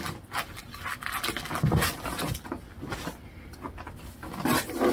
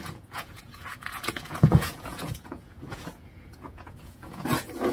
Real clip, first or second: first